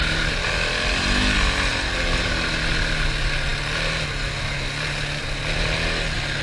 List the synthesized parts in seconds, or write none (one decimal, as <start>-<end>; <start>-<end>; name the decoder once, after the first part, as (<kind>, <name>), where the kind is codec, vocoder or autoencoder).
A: none